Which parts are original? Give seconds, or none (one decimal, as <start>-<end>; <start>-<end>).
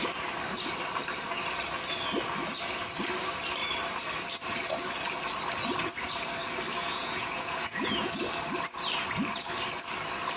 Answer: 0.0-6.8; 8.2-10.4